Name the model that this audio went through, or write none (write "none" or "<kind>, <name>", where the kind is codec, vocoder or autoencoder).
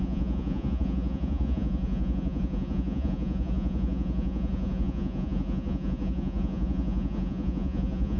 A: vocoder, Vocos